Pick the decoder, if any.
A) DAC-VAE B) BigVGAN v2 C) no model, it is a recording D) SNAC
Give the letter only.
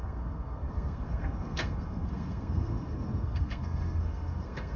D